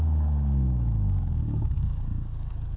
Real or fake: fake